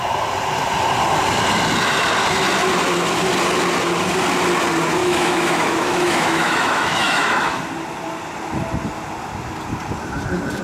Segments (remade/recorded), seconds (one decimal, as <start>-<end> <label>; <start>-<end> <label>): 0.0-5.0 recorded; 5.0-7.6 remade; 7.6-10.6 recorded